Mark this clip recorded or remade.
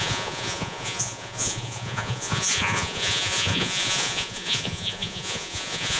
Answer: remade